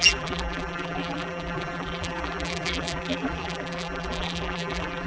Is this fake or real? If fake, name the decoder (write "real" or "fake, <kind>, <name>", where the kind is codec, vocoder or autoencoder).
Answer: fake, vocoder, BigVGAN v2